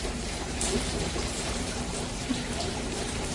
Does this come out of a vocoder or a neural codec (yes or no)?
yes